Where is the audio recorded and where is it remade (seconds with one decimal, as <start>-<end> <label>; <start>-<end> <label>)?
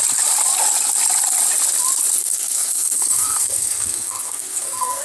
0.0-2.2 recorded; 2.2-5.0 remade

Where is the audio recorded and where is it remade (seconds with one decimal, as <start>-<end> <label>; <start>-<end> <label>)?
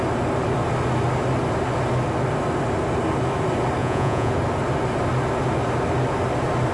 0.0-3.8 recorded; 3.8-4.3 remade; 4.3-6.7 recorded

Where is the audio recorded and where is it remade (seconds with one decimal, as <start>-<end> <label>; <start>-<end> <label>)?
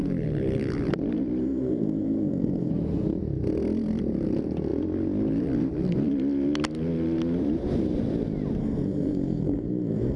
0.0-1.4 recorded; 1.4-2.7 remade; 2.7-8.6 recorded; 8.6-10.2 remade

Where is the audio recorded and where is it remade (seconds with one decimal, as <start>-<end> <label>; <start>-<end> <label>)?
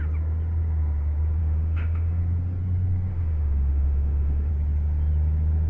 0.0-1.4 recorded; 1.4-2.2 remade; 2.2-3.1 recorded; 3.1-4.5 remade; 4.5-5.7 recorded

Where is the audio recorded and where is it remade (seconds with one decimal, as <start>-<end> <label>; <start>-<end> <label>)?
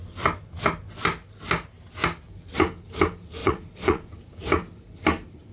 0.0-3.4 recorded; 3.4-4.1 remade; 4.1-5.5 recorded